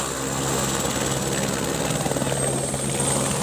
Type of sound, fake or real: real